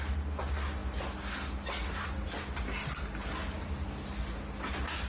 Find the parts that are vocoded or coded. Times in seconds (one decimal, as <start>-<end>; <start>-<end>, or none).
none